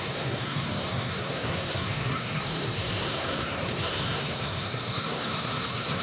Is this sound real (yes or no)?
no